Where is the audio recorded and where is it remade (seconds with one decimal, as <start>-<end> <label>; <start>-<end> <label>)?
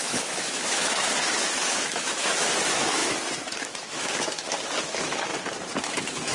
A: 0.0-5.3 remade; 5.3-5.8 recorded; 5.8-6.3 remade